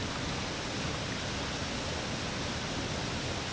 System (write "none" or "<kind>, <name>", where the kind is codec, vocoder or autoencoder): none